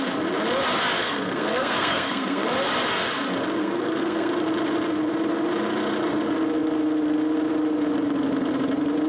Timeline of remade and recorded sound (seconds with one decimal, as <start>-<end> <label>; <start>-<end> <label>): 0.0-1.0 recorded; 1.0-2.5 remade; 2.5-3.6 recorded; 3.6-4.3 remade; 4.3-9.1 recorded